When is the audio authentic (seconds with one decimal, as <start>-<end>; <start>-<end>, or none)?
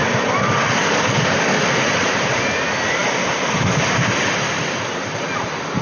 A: 0.0-0.8; 1.6-5.8